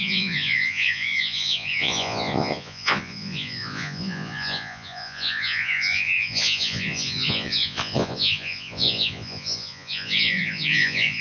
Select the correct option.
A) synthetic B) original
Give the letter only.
A